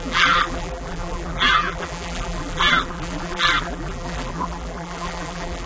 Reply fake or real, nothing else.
fake